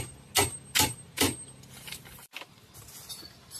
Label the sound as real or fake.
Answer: real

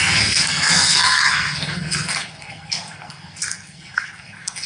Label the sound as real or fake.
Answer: fake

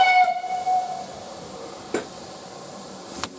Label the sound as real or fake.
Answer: fake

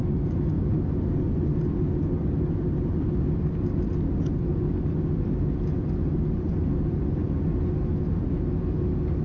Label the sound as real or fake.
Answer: real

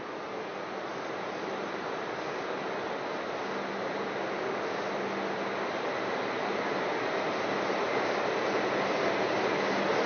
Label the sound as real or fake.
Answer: real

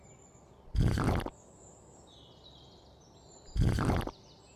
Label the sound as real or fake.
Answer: real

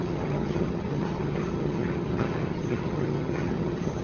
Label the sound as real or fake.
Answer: fake